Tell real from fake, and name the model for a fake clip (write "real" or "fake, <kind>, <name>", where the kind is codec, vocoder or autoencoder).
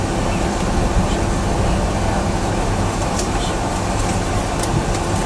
real